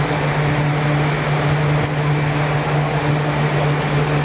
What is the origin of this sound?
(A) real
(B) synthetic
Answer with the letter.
A